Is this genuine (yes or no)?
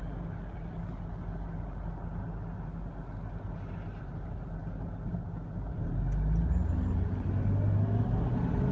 yes